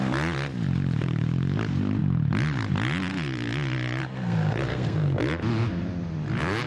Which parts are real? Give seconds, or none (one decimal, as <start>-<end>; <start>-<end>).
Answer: 0.0-4.0; 5.2-6.7

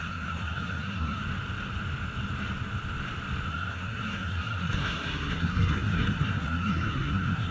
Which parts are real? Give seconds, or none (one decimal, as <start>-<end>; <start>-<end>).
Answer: 1.2-3.5